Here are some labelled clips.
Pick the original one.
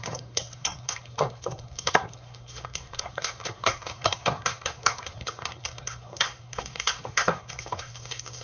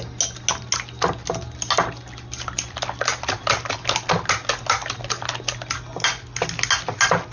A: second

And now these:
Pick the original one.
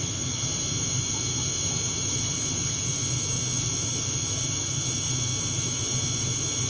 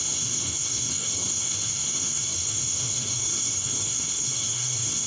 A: first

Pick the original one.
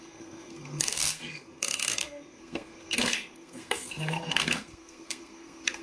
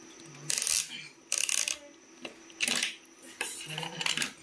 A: second